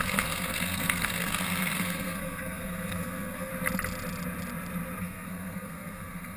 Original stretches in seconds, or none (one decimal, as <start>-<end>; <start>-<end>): 3.5-5.0